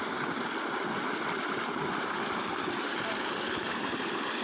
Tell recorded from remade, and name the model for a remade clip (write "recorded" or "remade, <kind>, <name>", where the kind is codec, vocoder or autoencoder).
recorded